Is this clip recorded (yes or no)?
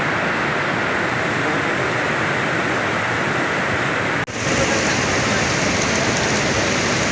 yes